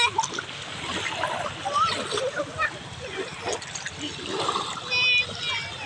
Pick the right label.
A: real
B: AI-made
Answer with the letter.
A